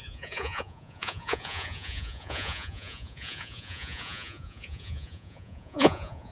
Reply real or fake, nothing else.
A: fake